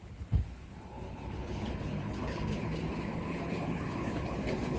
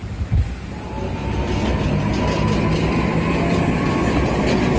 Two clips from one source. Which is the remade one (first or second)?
first